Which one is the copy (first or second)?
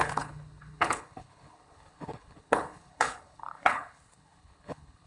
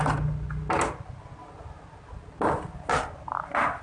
first